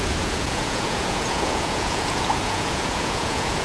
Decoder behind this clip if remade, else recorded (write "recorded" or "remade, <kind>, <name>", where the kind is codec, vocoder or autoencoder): remade, vocoder, Vocos